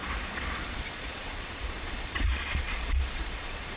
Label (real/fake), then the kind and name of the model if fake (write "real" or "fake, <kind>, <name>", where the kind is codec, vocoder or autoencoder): fake, vocoder, Vocos